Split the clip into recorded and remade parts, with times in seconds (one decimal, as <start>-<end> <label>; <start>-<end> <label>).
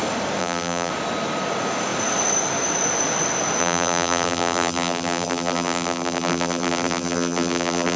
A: 0.0-0.4 recorded; 0.4-0.9 remade; 0.9-3.6 recorded; 3.6-8.0 remade